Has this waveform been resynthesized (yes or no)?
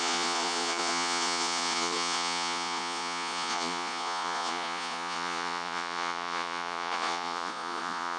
yes